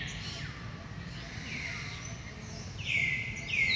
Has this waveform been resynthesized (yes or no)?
no